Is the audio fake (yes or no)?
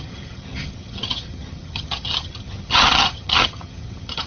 yes